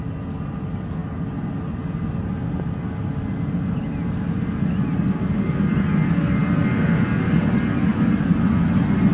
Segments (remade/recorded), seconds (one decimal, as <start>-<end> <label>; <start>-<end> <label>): 0.0-9.1 recorded